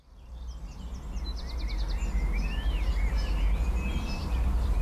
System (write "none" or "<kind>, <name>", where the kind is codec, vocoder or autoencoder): none